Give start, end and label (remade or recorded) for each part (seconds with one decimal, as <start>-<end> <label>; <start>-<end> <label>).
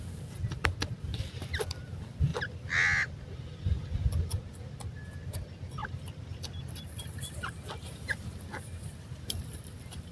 0.0-10.1 recorded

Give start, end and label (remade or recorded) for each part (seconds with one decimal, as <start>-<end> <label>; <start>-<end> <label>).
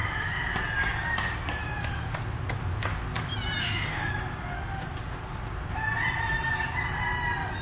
0.0-3.6 recorded; 3.6-4.1 remade; 4.1-7.6 recorded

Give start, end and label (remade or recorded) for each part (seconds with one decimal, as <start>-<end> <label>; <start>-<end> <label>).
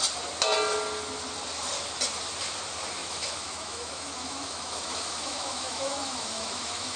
0.0-3.0 recorded; 3.0-7.0 remade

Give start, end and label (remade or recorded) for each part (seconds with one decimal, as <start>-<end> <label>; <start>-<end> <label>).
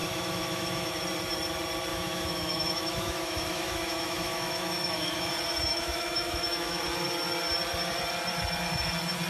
0.0-1.0 remade; 1.0-1.9 recorded; 1.9-5.3 remade; 5.3-5.7 recorded; 5.7-6.8 remade; 6.8-9.3 recorded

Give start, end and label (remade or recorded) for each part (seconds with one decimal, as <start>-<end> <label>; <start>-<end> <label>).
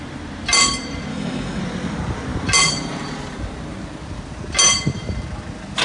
0.0-1.1 recorded; 1.1-1.6 remade; 1.6-5.8 recorded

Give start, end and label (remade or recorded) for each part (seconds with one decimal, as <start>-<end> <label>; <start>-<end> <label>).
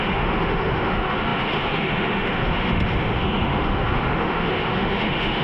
0.0-5.4 remade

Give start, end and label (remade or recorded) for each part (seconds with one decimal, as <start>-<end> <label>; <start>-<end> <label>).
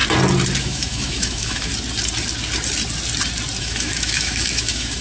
0.0-0.6 recorded; 0.6-1.7 remade; 1.7-3.6 recorded; 3.6-5.0 remade